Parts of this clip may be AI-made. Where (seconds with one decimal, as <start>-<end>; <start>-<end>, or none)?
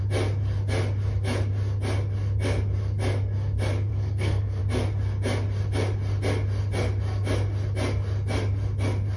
3.9-4.6